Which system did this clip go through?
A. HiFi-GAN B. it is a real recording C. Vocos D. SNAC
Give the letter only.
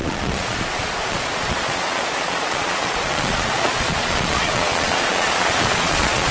C